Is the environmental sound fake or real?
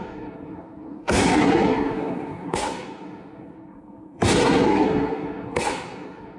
fake